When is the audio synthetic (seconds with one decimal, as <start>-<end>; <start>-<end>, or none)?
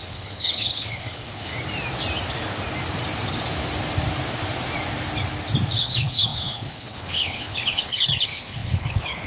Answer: 0.0-1.5; 5.8-9.3